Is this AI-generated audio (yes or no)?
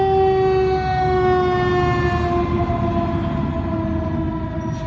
no